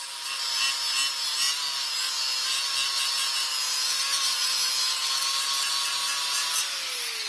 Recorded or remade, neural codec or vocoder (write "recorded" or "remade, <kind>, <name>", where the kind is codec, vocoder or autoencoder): recorded